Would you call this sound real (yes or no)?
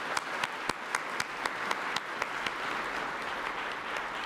yes